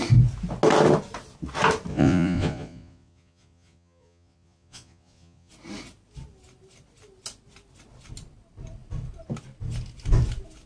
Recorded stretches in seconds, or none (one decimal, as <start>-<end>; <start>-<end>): 0.0-1.9; 5.5-10.7